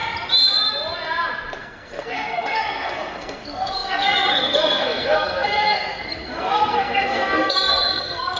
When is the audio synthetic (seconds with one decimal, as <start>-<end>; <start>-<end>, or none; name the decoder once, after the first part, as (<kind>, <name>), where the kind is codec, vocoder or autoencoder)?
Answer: 1.6-8.4 (codec, SNAC)